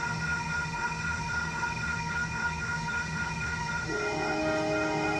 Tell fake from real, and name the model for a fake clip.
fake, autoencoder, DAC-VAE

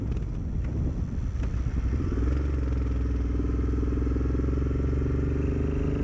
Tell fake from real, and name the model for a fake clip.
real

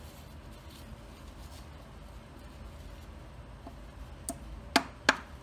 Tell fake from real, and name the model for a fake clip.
real